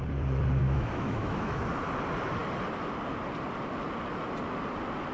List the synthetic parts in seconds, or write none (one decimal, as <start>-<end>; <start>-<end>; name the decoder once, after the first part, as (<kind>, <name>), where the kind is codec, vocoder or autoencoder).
0.6-1.6 (autoencoder, DAC-VAE)